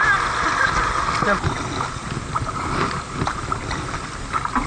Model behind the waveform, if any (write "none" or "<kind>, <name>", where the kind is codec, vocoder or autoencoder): none